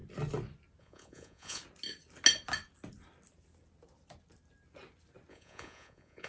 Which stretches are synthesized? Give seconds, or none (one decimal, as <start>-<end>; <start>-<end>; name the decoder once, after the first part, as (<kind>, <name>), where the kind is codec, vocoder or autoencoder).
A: 0.8-1.6 (vocoder, Vocos); 5.3-6.3